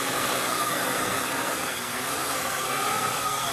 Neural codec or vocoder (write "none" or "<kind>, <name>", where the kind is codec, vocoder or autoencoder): codec, SNAC